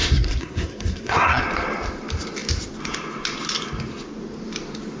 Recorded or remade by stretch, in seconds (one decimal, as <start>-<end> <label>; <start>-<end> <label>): 0.0-1.4 remade; 1.4-5.0 recorded